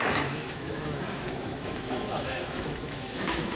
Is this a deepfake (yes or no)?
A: yes